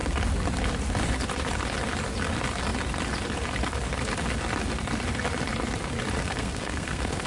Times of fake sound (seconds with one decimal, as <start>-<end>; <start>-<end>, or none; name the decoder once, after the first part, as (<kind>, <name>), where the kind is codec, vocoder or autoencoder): 6.2-7.3 (codec, SNAC)